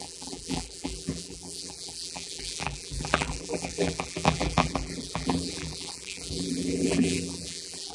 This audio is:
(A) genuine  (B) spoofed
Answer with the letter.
B